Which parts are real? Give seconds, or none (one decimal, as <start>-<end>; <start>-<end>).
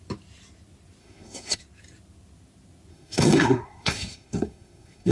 0.0-1.0; 1.6-2.9